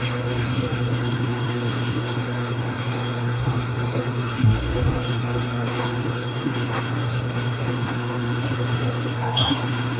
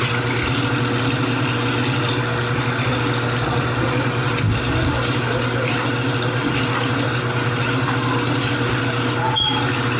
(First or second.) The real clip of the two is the second